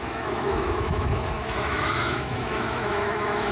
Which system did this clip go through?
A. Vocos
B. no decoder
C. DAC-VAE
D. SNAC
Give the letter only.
C